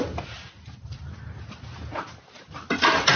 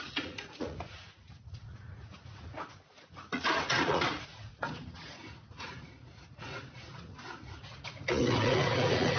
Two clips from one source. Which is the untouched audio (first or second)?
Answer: first